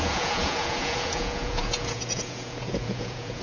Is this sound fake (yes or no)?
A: yes